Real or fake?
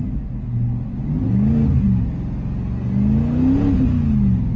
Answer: real